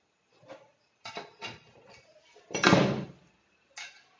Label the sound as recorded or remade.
recorded